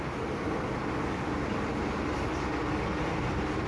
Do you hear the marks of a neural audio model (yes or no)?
no